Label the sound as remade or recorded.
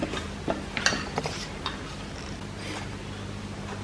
recorded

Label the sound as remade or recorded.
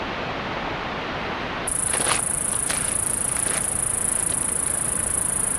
remade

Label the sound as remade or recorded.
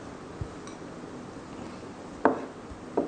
recorded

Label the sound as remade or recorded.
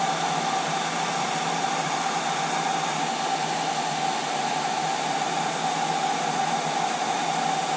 recorded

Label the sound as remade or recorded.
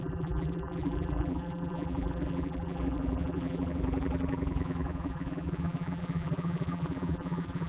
remade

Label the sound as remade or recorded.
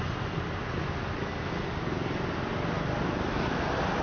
recorded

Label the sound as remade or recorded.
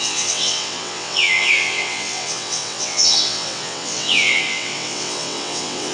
remade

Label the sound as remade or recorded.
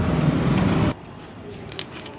remade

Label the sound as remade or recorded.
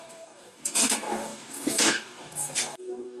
remade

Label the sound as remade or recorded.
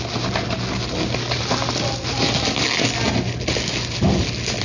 recorded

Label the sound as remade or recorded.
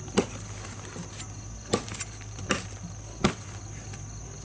recorded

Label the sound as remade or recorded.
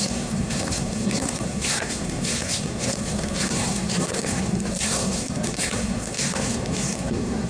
remade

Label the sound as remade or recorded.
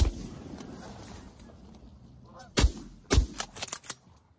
recorded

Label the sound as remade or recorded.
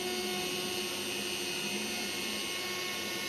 recorded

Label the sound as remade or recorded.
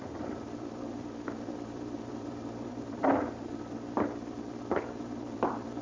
remade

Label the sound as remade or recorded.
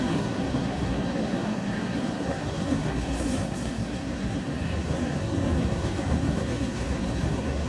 remade